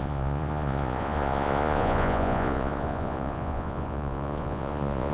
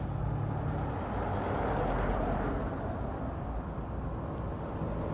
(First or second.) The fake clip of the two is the first